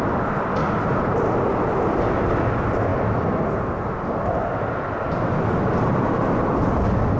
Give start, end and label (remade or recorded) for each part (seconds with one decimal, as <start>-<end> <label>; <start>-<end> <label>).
0.0-7.2 recorded